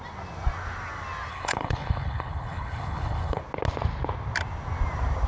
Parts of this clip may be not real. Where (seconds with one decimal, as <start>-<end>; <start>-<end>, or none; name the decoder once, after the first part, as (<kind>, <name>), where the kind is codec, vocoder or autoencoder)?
1.3-3.4 (codec, HILCodec)